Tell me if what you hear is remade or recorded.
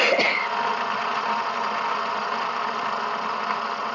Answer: recorded